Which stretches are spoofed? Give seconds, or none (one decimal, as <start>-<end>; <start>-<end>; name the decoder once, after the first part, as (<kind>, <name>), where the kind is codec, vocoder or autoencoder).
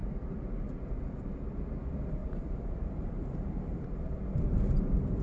2.2-3.9 (vocoder, BigVGAN v2)